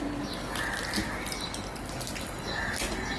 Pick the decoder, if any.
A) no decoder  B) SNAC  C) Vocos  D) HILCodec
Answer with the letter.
A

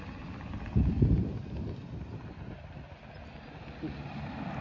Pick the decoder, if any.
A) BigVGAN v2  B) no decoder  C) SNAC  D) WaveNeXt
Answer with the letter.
B